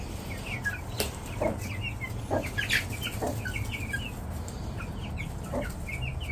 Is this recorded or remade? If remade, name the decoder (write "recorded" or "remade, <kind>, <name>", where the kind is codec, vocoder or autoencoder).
recorded